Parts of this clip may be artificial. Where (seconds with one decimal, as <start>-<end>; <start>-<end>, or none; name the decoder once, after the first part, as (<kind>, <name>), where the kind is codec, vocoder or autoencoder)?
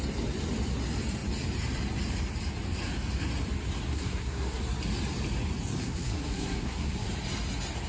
3.9-4.6 (codec, SNAC); 5.8-7.1